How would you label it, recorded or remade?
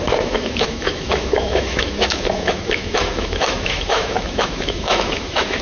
remade